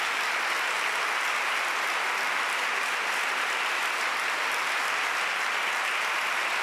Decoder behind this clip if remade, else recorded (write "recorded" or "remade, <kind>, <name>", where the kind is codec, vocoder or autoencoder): recorded